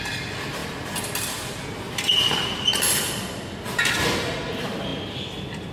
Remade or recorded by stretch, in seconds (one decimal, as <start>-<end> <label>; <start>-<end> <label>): 0.0-5.7 recorded